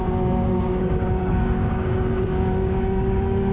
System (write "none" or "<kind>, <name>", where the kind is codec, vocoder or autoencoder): codec, DAC